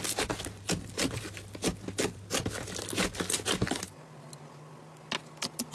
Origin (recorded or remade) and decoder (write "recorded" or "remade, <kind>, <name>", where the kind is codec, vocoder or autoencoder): recorded